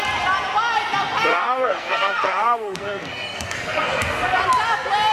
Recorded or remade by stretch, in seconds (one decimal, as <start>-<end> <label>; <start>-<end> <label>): 0.0-1.3 recorded; 1.3-4.4 remade; 4.4-5.1 recorded